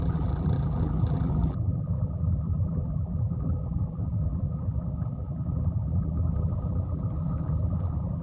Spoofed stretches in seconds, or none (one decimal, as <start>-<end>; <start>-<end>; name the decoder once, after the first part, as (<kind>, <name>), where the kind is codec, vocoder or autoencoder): 0.0-8.2 (vocoder, BigVGAN v2)